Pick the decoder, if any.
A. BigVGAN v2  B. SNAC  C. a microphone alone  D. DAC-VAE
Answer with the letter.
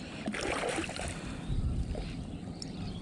C